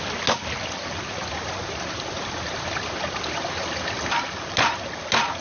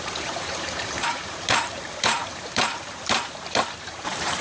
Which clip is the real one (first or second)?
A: first